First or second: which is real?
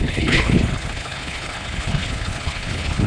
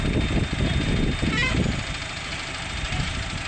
second